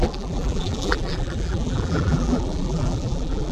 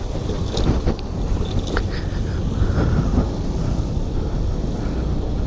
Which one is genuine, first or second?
second